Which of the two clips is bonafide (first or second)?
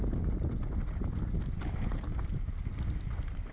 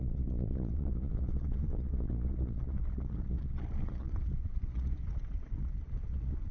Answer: first